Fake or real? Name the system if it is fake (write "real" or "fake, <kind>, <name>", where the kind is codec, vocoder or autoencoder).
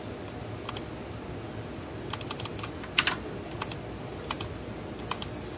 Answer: real